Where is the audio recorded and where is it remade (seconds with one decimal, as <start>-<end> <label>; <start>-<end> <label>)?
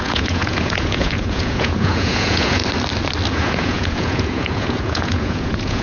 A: 0.0-2.6 remade; 2.6-3.3 recorded; 3.3-5.8 remade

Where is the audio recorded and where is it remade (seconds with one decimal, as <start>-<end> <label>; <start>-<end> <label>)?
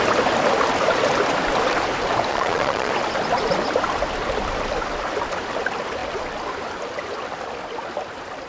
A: 0.0-2.3 recorded; 2.3-2.9 remade; 2.9-8.5 recorded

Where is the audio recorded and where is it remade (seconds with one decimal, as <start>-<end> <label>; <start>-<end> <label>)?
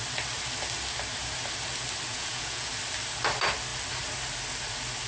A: 0.0-2.1 recorded; 2.1-2.7 remade; 2.7-5.1 recorded